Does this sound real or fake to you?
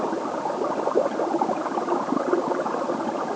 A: real